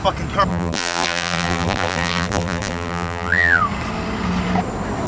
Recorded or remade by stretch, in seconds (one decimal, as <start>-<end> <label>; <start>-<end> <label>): 0.0-0.5 recorded; 0.5-3.6 remade; 3.6-5.1 recorded